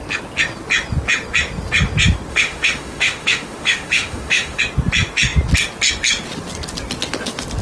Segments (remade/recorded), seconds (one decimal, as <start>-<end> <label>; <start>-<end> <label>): 0.0-2.3 recorded; 2.3-4.6 remade; 4.6-7.6 recorded

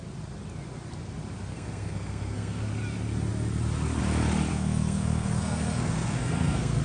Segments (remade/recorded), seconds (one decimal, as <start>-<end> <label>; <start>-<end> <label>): 0.0-1.5 recorded; 1.5-2.6 remade; 2.6-4.5 recorded; 4.5-6.8 remade

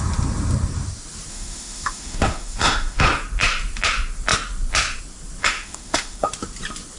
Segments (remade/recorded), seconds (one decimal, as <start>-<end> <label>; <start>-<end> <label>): 0.0-1.3 recorded; 1.3-3.0 remade; 3.0-5.4 recorded; 5.4-6.3 remade; 6.3-7.0 recorded

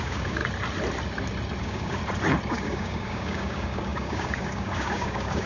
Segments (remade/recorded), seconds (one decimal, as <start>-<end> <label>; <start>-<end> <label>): 0.0-0.4 remade; 0.4-1.6 recorded; 1.6-2.0 remade; 2.0-2.5 recorded; 2.5-5.5 remade

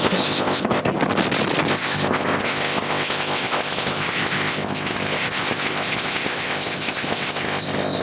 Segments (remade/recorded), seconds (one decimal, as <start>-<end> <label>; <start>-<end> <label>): 0.0-0.9 remade; 0.9-1.7 recorded; 1.7-8.0 remade

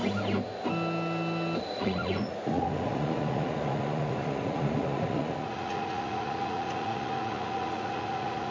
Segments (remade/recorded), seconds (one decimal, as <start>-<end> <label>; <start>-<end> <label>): 0.0-1.6 recorded; 1.6-8.5 remade